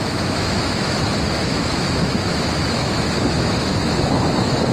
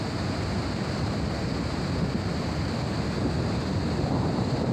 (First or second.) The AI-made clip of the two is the first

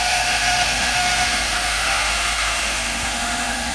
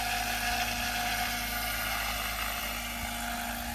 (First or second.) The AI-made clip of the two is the first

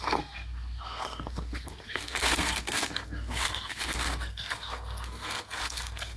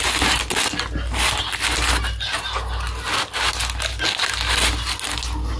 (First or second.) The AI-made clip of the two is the first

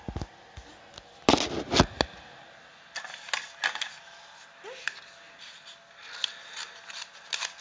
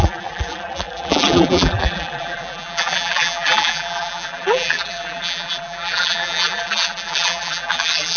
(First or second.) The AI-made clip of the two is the second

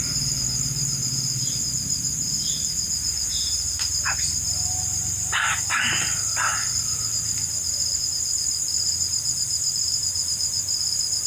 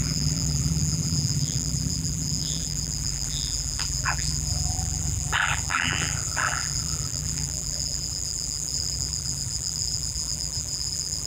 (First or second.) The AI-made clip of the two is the second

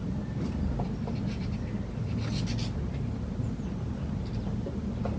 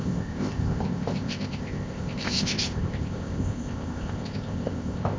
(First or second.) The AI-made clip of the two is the second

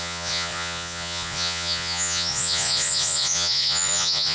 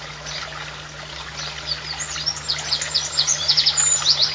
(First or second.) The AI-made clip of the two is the first